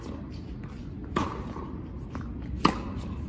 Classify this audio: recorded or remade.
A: recorded